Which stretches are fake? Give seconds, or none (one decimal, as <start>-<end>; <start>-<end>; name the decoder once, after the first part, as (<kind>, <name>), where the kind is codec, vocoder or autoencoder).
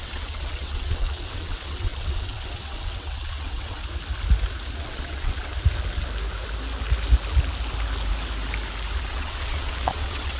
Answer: 0.0-3.8 (vocoder, WaveNeXt); 4.8-5.5; 9.1-10.4